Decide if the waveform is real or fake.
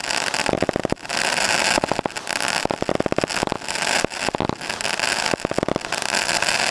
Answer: real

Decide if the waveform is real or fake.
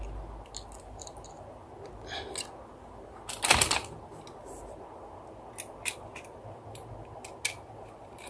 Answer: real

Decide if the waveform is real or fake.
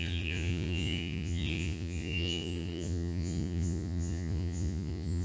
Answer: fake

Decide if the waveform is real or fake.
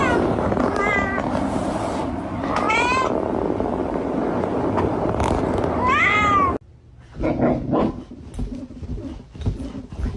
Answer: real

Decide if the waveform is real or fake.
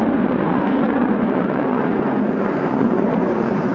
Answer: fake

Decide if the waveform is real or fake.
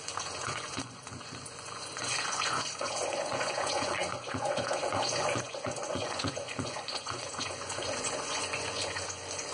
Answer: fake